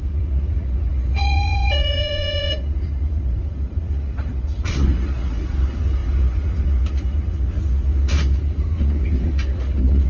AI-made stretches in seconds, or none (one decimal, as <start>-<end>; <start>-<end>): 0.0-10.1